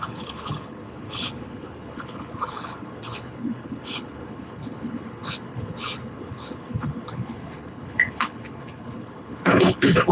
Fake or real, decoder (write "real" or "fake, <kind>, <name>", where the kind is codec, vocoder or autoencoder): fake, codec, HILCodec